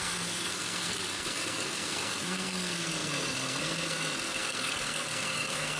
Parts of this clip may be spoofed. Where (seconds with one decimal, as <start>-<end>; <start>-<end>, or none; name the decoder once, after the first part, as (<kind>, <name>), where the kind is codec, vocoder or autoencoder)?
0.0-5.8 (codec, SNAC)